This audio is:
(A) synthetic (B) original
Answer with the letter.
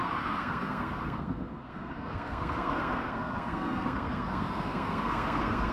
A